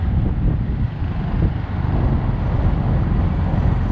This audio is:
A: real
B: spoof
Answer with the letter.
A